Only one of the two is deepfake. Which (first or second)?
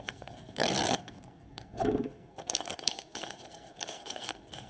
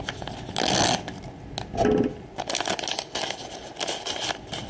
first